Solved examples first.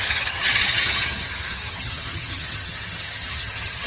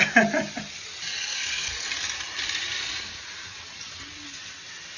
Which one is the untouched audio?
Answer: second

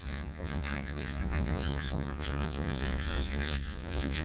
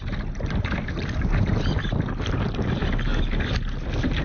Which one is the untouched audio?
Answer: second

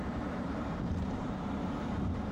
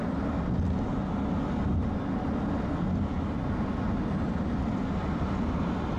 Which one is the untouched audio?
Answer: second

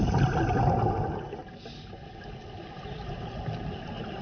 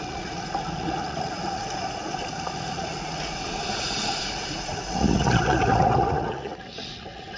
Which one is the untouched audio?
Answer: first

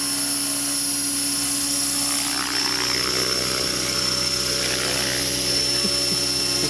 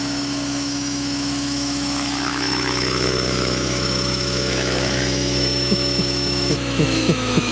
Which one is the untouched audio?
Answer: first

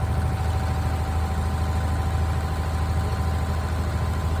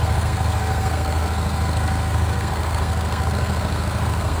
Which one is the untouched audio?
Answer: first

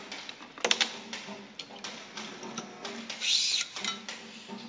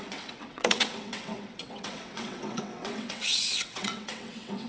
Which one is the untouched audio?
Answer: first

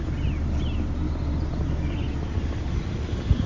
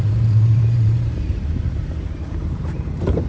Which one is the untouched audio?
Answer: first